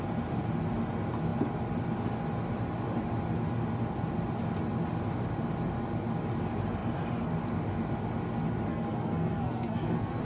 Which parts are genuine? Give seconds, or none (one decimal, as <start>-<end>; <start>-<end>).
0.0-8.7